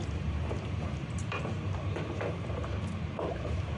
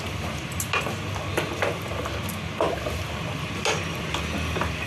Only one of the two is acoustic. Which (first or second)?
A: second